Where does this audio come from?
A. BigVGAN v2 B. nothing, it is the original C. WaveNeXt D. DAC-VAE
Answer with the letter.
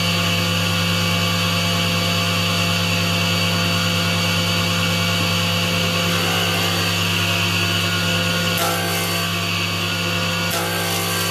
B